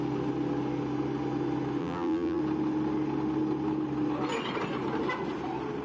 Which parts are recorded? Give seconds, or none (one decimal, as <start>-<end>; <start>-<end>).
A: 0.0-1.8; 2.4-5.8